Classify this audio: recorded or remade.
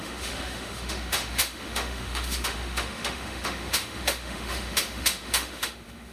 remade